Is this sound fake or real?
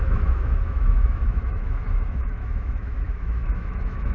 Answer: fake